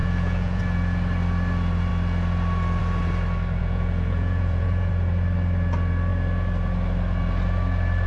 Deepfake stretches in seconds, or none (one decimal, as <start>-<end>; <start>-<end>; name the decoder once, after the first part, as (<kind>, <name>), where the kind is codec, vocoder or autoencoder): 0.0-0.6 (vocoder, Vocos); 3.6-4.9